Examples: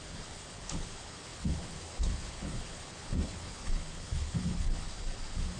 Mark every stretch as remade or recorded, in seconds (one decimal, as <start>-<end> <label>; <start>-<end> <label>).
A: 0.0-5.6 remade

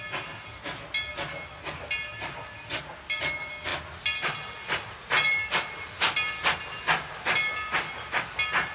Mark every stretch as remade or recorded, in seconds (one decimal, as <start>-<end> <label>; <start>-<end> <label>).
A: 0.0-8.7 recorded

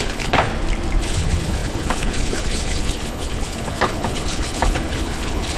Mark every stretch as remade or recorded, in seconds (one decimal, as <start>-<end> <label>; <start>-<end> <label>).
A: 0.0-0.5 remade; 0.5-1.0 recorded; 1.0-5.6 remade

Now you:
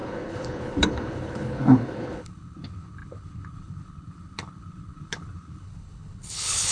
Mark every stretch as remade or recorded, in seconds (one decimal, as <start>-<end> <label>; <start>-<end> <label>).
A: 0.0-6.7 remade

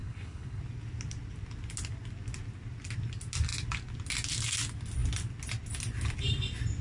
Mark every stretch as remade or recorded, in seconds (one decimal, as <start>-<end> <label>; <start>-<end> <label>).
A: 0.0-0.6 remade; 0.6-6.8 recorded

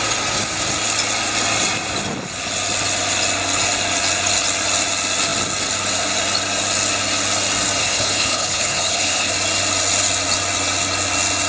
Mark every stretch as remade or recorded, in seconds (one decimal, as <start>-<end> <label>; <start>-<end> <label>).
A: 0.0-7.8 recorded; 7.8-9.3 remade; 9.3-11.5 recorded